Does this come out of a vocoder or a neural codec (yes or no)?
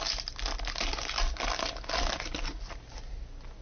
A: no